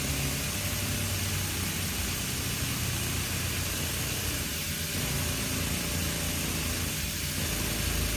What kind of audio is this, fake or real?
real